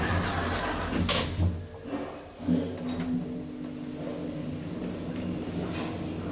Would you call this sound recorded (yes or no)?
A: yes